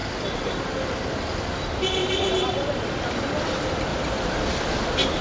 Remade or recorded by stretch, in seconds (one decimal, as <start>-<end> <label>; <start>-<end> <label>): 0.0-0.5 remade; 0.5-2.0 recorded; 2.0-2.8 remade; 2.8-3.9 recorded; 3.9-4.5 remade; 4.5-5.2 recorded